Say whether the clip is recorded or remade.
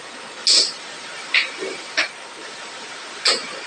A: recorded